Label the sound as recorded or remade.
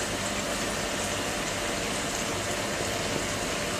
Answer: recorded